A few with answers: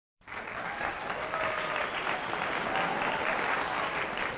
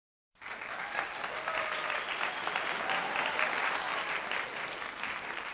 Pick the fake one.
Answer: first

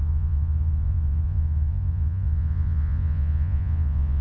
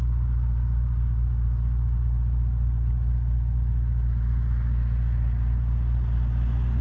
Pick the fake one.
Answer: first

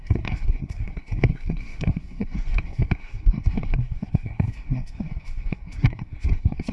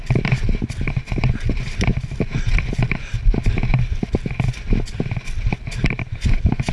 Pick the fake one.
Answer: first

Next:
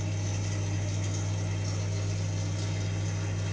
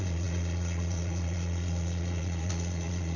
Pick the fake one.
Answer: second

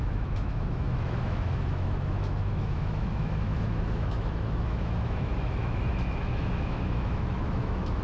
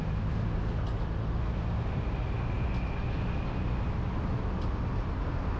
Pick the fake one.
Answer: first